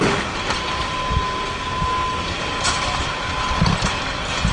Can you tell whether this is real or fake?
real